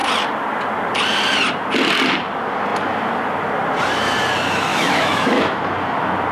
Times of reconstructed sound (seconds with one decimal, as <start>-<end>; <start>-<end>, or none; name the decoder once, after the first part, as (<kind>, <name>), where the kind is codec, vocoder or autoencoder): 4.7-5.6 (autoencoder, DAC-VAE)